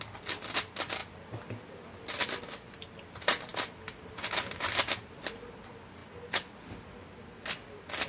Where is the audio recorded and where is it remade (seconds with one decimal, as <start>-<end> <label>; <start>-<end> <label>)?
0.0-8.1 recorded